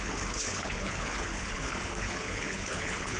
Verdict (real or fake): fake